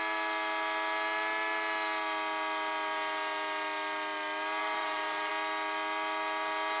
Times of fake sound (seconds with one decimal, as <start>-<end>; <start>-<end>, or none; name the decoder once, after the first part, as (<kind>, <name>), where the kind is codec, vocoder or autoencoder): 4.6-5.3 (vocoder, BigVGAN v2)